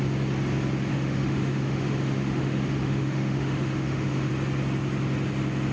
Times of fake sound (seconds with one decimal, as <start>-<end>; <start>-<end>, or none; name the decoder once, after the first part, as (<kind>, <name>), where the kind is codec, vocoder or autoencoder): 0.9-4.3 (autoencoder, DAC-VAE)